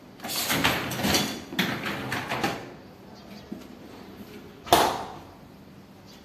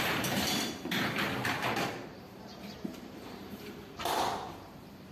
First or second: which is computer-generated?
second